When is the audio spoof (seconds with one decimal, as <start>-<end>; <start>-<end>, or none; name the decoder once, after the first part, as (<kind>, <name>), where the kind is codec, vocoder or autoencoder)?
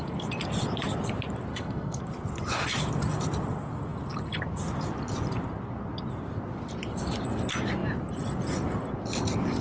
1.5-2.0 (codec, SNAC)